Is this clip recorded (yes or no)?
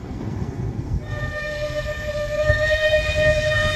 no